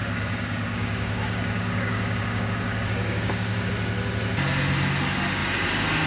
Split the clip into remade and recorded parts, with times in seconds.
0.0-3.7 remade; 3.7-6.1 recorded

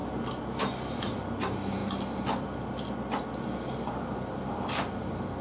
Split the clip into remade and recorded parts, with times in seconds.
0.0-5.4 recorded

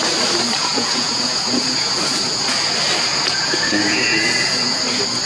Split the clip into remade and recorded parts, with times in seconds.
0.0-0.6 recorded; 0.6-2.7 remade; 2.7-3.1 recorded; 3.1-4.8 remade; 4.8-5.3 recorded

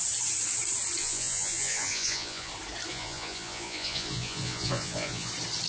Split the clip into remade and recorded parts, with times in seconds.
0.0-1.0 recorded; 1.0-2.5 remade; 2.5-2.9 recorded; 2.9-5.3 remade; 5.3-5.7 recorded

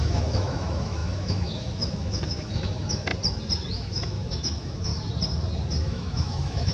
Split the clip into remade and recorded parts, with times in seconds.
0.0-3.1 remade; 3.1-3.7 recorded; 3.7-4.9 remade; 4.9-5.8 recorded; 5.8-6.7 remade

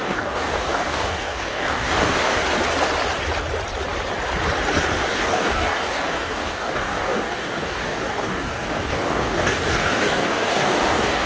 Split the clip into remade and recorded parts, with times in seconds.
0.0-2.4 remade; 2.4-5.1 recorded; 5.1-11.3 remade